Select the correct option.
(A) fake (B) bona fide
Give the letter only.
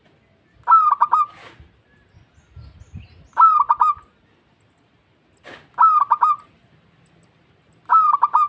B